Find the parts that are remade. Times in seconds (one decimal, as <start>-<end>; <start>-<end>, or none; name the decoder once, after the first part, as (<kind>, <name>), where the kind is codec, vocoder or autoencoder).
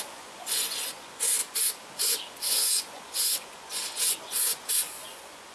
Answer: 0.0-5.5 (vocoder, Vocos)